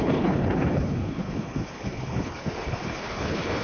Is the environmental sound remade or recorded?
remade